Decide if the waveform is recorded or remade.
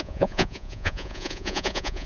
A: remade